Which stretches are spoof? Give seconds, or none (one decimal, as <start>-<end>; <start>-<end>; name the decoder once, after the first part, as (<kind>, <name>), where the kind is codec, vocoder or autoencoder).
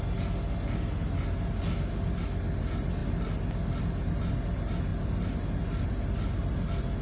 none